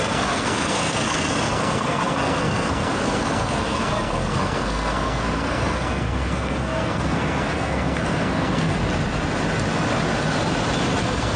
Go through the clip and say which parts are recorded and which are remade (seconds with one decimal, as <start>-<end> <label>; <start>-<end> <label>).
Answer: 0.0-8.8 remade; 8.8-11.0 recorded; 11.0-11.4 remade